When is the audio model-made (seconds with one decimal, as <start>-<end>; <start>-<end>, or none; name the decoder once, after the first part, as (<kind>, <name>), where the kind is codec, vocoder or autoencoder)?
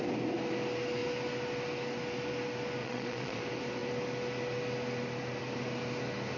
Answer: 2.8-3.4 (vocoder, Vocos)